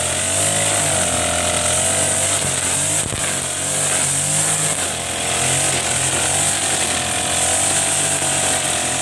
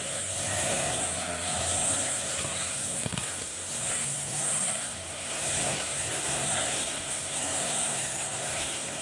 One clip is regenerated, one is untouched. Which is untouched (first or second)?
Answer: first